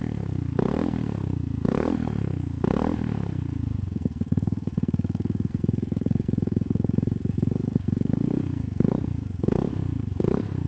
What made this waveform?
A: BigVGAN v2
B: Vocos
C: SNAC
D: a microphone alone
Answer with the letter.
C